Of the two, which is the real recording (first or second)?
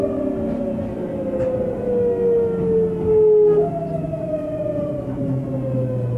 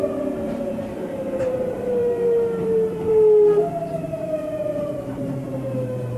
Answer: first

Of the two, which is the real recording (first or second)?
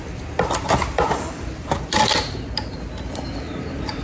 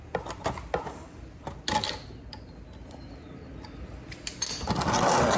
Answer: second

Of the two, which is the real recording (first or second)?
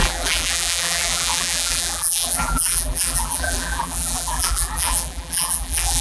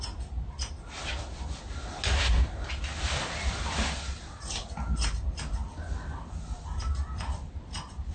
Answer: second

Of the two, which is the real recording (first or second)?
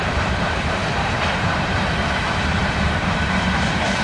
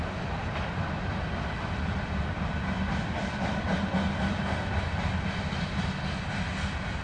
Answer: second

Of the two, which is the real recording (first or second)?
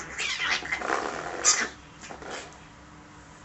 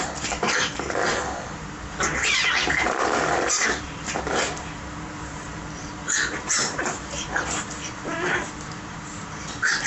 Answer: first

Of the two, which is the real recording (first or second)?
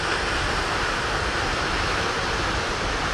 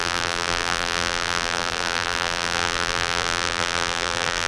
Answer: first